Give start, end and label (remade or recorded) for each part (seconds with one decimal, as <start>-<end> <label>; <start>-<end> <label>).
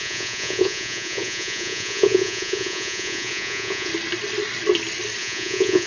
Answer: 0.0-3.9 remade; 3.9-5.2 recorded; 5.2-5.9 remade